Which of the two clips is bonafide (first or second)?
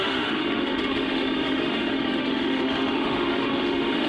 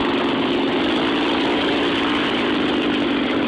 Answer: second